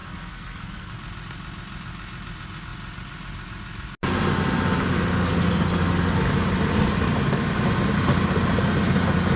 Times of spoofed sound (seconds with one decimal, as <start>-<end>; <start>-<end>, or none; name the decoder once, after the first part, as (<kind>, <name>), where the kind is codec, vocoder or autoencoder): 0.0-0.9 (codec, SNAC)